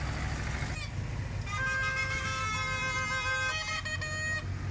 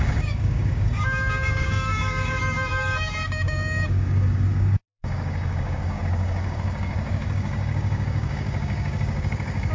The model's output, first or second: second